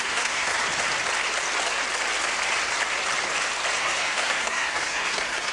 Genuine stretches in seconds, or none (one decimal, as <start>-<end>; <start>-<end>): 0.5-3.8